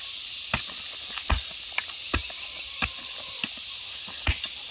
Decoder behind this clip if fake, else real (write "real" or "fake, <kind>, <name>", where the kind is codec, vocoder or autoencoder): real